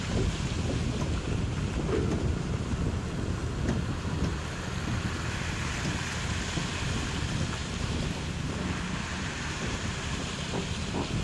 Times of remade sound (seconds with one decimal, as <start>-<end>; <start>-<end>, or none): 7.6-10.4